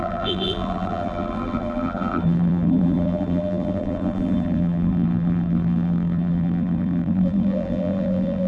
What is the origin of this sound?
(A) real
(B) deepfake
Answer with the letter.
B